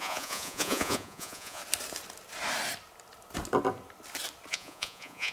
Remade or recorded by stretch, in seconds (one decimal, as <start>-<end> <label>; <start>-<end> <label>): 0.0-1.6 remade; 1.6-4.5 recorded; 4.5-5.3 remade

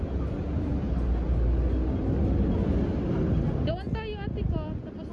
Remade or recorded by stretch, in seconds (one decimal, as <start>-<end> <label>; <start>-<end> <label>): 0.0-5.1 recorded

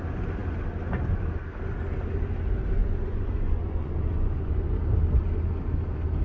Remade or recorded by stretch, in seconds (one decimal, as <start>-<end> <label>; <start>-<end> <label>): 0.0-2.8 recorded; 2.8-4.5 remade; 4.5-6.2 recorded

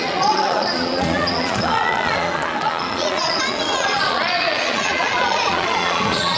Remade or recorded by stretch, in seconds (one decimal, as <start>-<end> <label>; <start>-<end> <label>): 0.0-6.4 remade

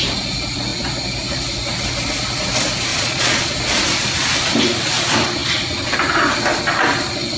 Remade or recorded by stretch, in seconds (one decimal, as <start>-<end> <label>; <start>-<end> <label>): 0.0-2.9 recorded; 2.9-3.5 remade; 3.5-7.4 recorded